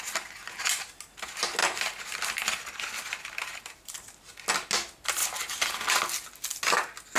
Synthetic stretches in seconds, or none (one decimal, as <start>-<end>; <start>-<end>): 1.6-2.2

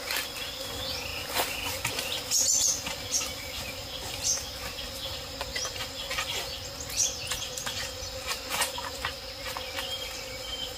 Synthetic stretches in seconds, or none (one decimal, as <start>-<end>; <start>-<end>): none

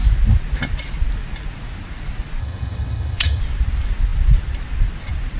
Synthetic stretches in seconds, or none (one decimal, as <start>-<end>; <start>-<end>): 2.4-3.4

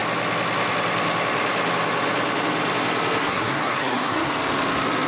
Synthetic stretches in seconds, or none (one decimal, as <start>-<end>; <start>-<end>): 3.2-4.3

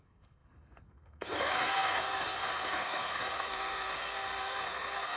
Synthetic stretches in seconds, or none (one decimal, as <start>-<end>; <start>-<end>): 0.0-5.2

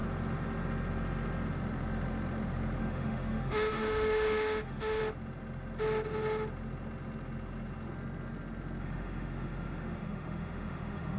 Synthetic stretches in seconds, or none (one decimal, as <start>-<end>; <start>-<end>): 2.8-5.0; 8.8-11.2

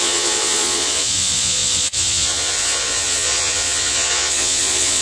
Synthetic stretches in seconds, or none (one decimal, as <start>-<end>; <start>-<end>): 0.0-5.0

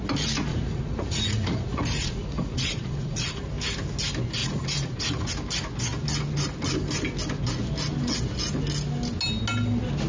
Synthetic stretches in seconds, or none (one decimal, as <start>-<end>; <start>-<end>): 0.5-3.4; 4.4-5.3